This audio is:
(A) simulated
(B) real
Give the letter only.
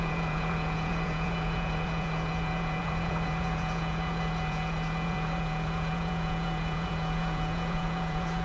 A